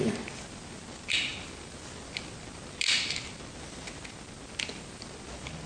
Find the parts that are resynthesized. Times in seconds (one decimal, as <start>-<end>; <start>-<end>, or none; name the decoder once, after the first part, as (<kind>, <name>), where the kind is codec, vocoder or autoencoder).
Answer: none